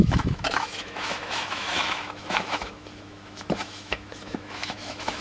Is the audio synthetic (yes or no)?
yes